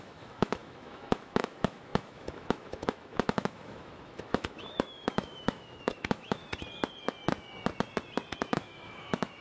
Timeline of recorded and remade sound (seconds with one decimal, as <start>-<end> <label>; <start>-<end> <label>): 0.0-6.4 remade; 6.4-8.4 recorded; 8.4-9.4 remade